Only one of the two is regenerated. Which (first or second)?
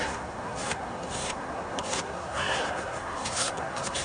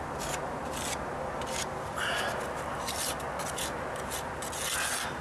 first